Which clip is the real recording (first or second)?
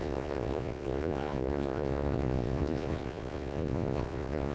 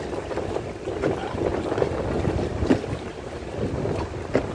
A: second